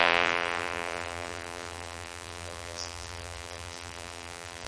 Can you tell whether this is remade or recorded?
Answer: remade